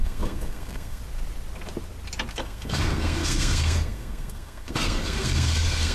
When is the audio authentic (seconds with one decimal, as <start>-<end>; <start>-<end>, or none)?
1.0-2.3